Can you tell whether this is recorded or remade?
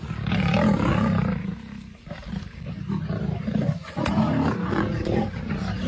recorded